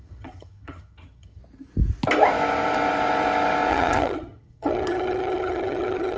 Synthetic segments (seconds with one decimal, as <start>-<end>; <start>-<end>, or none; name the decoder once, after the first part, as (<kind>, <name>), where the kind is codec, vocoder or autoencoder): 0.0-1.4 (vocoder, HiFi-GAN); 3.7-6.2